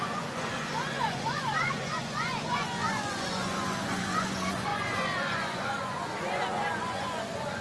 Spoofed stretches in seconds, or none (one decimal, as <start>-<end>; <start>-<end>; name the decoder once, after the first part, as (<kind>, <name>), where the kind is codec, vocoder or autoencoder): 0.0-7.6 (vocoder, Vocos)